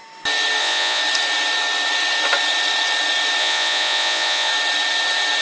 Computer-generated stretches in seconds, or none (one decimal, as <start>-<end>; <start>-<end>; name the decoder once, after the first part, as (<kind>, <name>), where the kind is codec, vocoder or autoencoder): 0.6-1.0 (vocoder, Vocos); 3.4-4.5